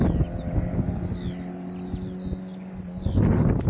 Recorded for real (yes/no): yes